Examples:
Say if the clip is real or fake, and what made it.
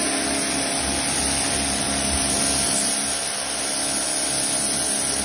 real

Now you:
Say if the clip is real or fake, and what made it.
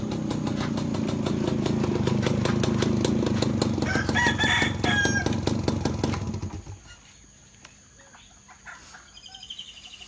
real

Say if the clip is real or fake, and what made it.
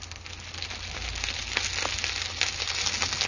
real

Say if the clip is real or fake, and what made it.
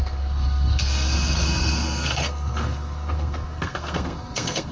fake, codec, SNAC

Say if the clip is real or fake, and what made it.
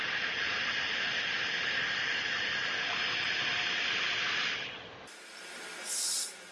real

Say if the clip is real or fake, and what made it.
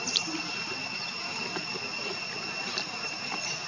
real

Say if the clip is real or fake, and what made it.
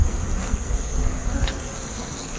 fake, codec, SNAC